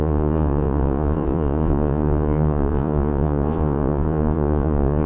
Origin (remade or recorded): remade